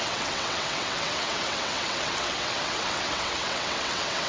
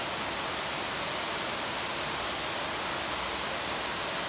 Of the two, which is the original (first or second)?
second